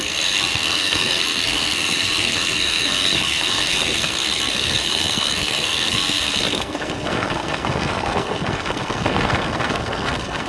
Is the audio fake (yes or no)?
yes